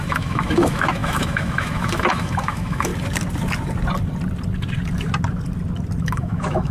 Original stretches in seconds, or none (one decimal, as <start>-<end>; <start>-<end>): 2.9-6.0